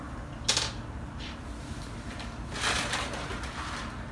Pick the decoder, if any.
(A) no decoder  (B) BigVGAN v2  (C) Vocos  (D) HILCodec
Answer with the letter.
A